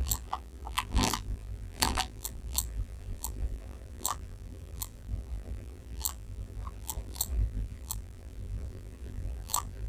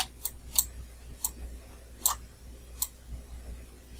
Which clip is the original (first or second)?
second